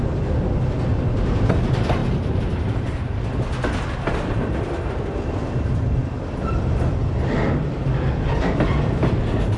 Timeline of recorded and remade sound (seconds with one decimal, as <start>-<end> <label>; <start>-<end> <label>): 0.0-0.9 remade; 0.9-1.5 recorded; 1.5-2.0 remade; 2.0-4.1 recorded; 4.1-9.6 remade